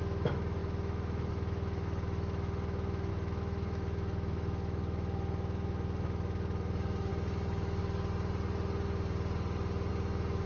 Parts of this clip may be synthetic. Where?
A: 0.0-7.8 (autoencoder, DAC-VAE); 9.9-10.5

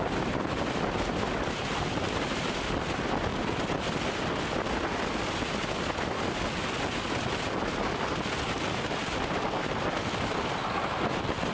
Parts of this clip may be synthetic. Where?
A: none

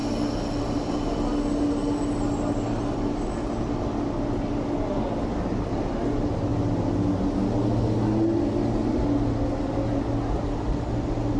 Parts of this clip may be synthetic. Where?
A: none

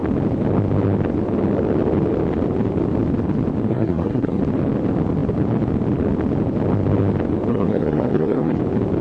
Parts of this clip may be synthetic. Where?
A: 3.7-4.4 (codec, SNAC); 7.5-8.6

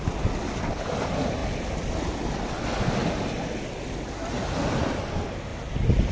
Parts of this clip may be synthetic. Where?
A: none